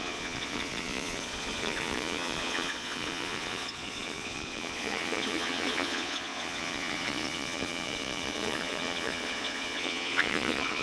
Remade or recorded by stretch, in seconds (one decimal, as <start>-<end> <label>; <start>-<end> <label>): 0.0-10.8 remade